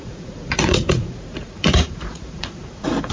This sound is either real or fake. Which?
fake